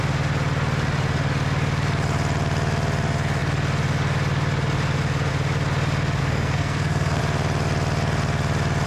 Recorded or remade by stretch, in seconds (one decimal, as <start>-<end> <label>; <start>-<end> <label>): 0.0-6.2 recorded; 6.2-7.2 remade; 7.2-8.9 recorded